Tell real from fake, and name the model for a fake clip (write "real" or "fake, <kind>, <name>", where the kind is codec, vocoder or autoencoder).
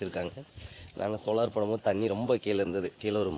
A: fake, vocoder, Vocos